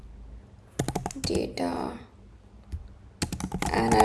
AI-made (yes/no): no